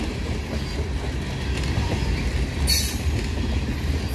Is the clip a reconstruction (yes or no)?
no